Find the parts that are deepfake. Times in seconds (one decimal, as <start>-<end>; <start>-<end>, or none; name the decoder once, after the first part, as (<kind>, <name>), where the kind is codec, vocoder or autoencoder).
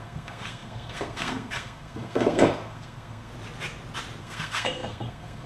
0.0-3.3 (codec, SNAC); 4.2-5.5